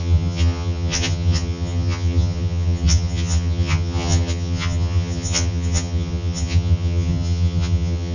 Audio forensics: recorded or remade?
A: remade